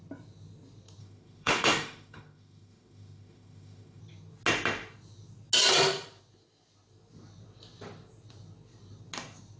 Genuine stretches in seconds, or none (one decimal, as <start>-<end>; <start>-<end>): 0.0-1.0; 4.0-9.6